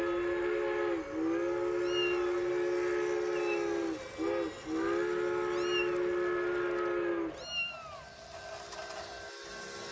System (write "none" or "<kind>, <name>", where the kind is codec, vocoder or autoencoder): none